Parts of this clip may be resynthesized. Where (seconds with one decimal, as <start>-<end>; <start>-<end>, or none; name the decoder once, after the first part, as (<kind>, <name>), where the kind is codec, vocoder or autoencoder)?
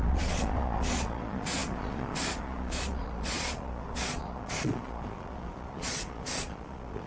0.0-7.1 (vocoder, Vocos)